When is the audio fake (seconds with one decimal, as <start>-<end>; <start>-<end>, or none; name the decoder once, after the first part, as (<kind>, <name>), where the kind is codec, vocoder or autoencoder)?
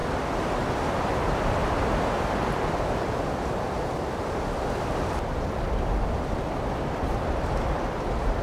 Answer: 0.7-1.6 (vocoder, BigVGAN v2); 4.8-8.4